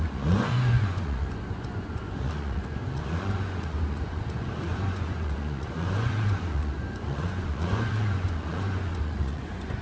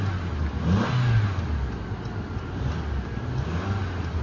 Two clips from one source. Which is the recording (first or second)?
second